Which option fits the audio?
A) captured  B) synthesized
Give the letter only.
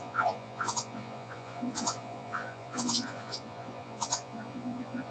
B